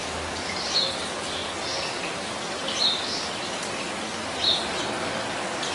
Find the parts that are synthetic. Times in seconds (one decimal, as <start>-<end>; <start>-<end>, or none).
none